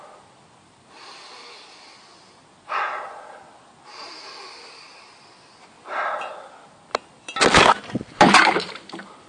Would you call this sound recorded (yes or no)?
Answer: yes